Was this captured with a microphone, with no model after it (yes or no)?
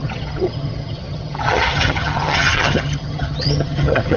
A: no